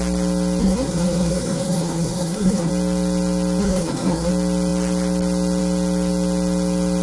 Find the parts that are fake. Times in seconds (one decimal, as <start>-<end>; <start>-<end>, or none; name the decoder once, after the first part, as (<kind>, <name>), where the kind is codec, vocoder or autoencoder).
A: 0.6-2.7 (codec, SNAC); 3.6-4.3